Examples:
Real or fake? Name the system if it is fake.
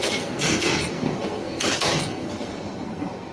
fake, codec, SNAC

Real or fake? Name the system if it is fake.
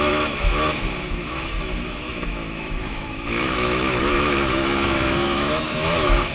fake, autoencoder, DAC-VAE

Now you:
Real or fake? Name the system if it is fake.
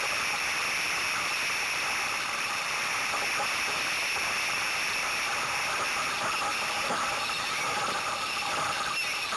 fake, vocoder, BigVGAN v2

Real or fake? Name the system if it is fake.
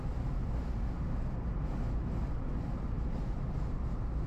real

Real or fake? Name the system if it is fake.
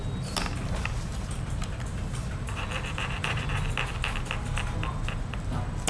real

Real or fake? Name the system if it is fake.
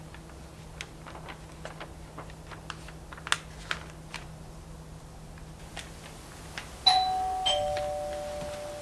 real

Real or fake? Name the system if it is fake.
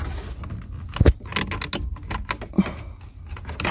real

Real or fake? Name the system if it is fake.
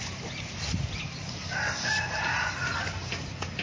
real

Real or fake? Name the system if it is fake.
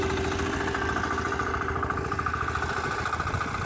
real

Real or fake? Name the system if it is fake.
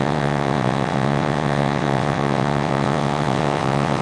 fake, vocoder, WaveNeXt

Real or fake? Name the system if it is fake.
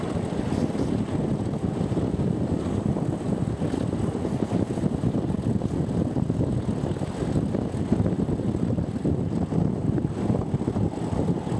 real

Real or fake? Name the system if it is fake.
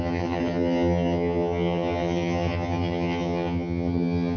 fake, vocoder, HiFi-GAN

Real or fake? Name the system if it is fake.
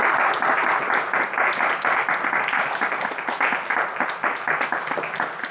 real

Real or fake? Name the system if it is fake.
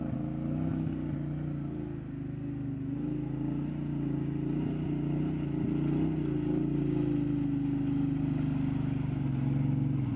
real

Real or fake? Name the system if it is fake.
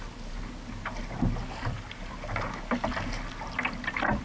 real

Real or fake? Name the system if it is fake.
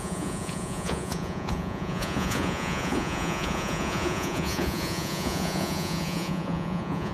fake, vocoder, Vocos